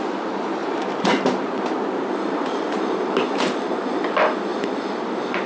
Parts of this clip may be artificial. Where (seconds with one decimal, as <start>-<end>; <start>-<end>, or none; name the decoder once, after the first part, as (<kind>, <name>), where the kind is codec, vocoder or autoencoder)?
0.6-3.5 (vocoder, BigVGAN v2); 4.5-5.5